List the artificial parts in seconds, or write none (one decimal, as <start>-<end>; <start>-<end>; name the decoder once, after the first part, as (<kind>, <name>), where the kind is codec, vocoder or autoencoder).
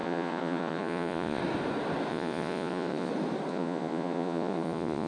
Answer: 0.0-1.4 (vocoder, Vocos); 2.1-3.1; 3.5-5.1